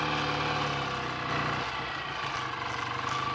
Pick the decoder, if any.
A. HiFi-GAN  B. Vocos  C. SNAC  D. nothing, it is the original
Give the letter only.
D